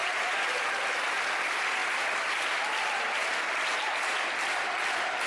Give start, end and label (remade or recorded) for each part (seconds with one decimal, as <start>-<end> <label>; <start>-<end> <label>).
0.0-5.3 recorded